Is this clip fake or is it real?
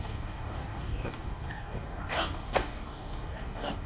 fake